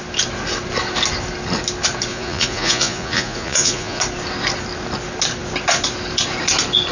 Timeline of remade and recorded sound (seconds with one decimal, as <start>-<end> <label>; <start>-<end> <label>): 0.0-2.1 recorded; 2.1-4.0 remade; 4.0-6.9 recorded